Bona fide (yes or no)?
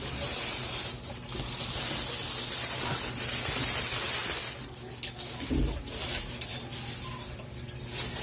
yes